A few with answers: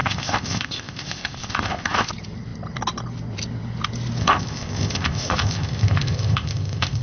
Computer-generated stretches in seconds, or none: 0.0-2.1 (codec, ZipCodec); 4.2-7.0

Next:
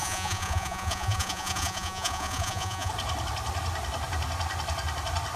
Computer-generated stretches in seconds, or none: 0.0-2.9 (vocoder, Vocos)

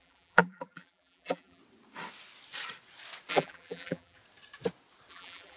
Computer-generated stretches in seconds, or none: 0.0-1.6 (vocoder, BigVGAN v2); 3.3-4.2; 5.1-5.6

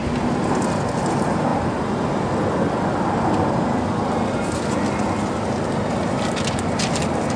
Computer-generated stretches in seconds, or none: none

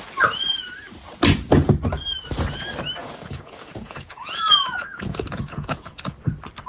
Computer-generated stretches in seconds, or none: 3.0-6.3 (vocoder, Vocos)

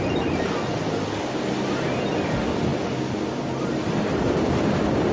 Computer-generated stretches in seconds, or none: none